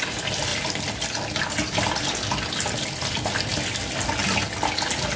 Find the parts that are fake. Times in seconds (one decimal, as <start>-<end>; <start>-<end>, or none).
none